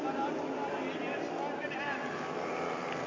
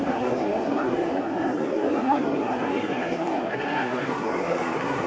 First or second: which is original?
first